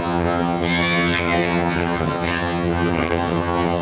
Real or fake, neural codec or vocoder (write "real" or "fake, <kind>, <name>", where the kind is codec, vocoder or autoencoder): fake, vocoder, HiFi-GAN